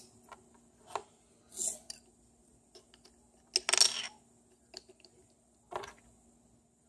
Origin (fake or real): real